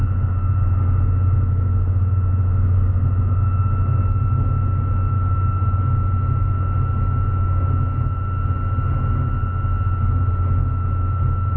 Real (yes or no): yes